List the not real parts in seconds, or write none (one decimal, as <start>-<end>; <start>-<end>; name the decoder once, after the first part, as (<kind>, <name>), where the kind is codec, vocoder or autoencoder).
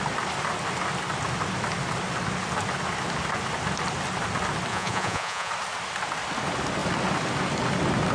4.7-5.5 (vocoder, Vocos)